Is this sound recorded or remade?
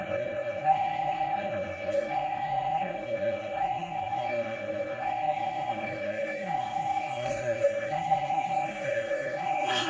remade